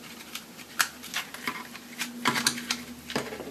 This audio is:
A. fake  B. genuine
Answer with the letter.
B